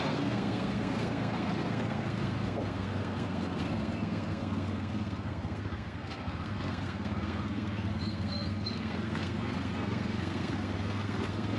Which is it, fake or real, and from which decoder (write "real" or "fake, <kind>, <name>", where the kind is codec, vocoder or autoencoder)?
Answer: fake, codec, SNAC